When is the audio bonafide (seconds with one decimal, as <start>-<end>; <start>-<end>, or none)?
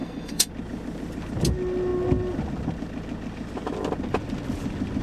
0.5-5.0